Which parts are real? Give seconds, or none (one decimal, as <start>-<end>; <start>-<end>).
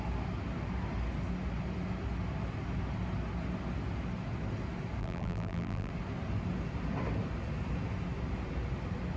0.0-5.0; 5.9-9.2